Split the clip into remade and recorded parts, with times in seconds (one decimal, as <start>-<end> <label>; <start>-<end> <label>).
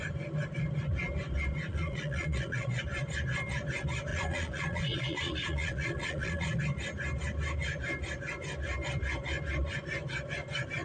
0.0-1.7 recorded; 1.7-2.8 remade; 2.8-4.1 recorded; 4.1-6.6 remade; 6.6-10.8 recorded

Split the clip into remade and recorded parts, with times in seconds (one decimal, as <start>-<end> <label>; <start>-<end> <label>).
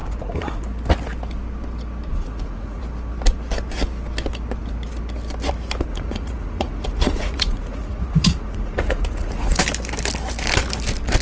0.0-0.6 remade; 0.6-2.1 recorded; 2.1-2.8 remade; 2.8-5.9 recorded; 5.9-9.6 remade; 9.6-11.2 recorded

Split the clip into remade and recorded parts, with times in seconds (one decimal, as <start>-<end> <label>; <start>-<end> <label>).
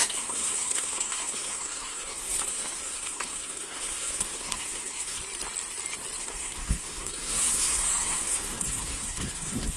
0.0-5.2 remade; 5.2-6.2 recorded; 6.2-9.8 remade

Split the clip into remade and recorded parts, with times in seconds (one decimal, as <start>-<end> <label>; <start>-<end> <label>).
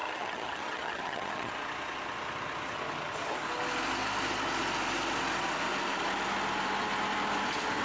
0.0-1.5 remade; 1.5-7.8 recorded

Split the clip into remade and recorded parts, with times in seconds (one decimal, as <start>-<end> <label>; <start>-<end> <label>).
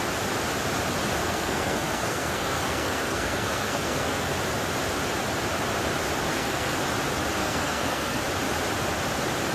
0.0-1.2 recorded; 1.2-4.3 remade; 4.3-6.3 recorded; 6.3-6.8 remade; 6.8-7.4 recorded; 7.4-8.2 remade; 8.2-9.5 recorded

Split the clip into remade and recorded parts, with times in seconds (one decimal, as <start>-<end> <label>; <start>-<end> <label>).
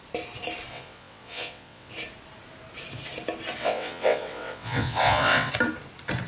0.0-0.7 recorded; 0.7-1.9 remade; 1.9-3.6 recorded; 3.6-5.5 remade; 5.5-6.3 recorded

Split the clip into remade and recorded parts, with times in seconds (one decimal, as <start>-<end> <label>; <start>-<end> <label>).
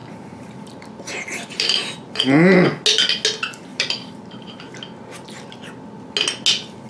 0.0-2.2 remade; 2.2-3.7 recorded; 3.7-4.6 remade; 4.6-6.9 recorded